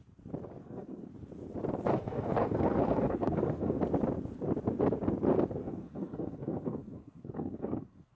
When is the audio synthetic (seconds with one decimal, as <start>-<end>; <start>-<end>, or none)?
0.6-1.1; 1.9-3.8; 5.6-8.1